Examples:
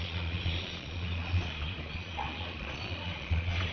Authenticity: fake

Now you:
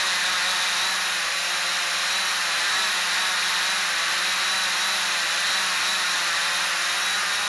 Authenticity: real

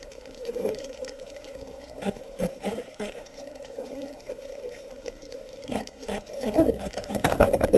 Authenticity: fake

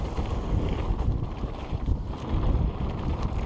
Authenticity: real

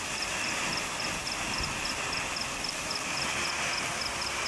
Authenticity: real